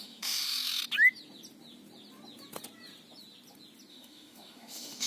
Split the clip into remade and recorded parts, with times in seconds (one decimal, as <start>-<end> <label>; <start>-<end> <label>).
0.0-0.8 remade; 0.8-3.9 recorded; 3.9-5.1 remade